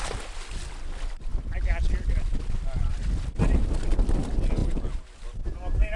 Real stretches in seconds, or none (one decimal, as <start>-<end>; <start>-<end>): 0.0-6.0

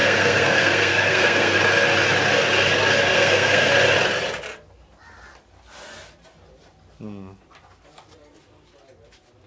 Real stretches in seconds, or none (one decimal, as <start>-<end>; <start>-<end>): 1.6-3.1; 3.7-9.5

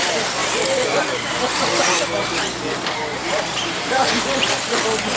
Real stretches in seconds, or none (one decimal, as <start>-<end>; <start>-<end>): 0.0-3.1; 4.2-5.2

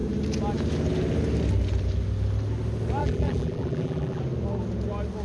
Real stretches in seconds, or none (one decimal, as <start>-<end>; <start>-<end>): 0.0-3.0; 4.2-5.2

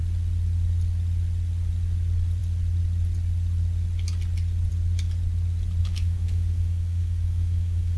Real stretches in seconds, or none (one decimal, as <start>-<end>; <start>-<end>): 0.0-5.8